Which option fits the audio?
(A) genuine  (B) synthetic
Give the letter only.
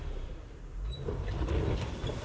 B